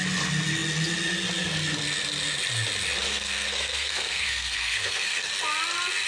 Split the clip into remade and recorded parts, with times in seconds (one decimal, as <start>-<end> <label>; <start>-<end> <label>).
0.0-3.1 recorded; 3.1-5.3 remade; 5.3-6.1 recorded